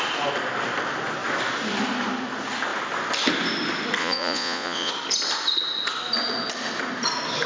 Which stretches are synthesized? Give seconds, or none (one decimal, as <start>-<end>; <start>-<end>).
4.0-4.9